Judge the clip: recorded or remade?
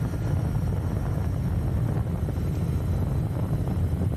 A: recorded